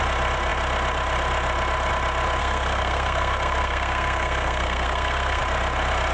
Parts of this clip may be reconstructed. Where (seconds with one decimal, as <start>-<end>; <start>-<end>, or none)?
2.4-5.4